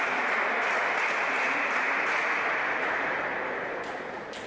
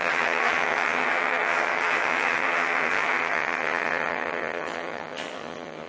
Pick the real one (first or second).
first